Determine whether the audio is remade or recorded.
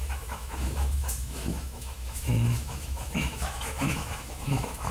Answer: remade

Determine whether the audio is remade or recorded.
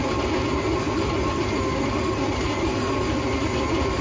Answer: recorded